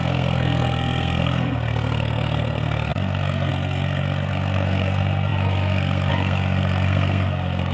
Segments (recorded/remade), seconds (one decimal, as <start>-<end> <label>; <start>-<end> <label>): 0.0-7.7 remade